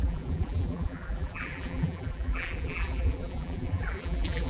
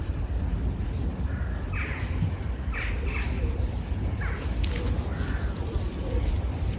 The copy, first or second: first